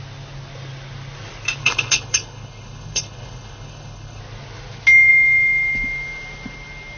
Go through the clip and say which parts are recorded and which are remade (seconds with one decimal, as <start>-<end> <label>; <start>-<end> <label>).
0.0-1.6 recorded; 1.6-4.2 remade; 4.2-7.0 recorded